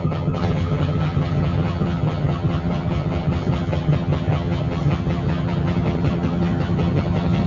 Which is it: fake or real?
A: fake